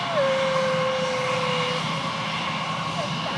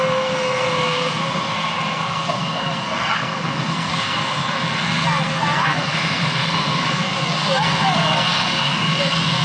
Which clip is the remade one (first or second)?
second